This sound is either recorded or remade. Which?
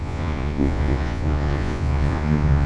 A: remade